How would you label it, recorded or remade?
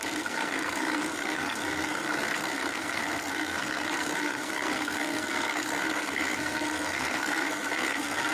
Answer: remade